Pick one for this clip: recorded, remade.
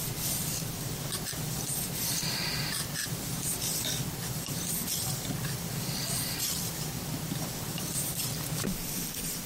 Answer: remade